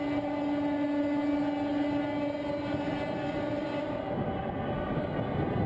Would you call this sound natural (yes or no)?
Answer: yes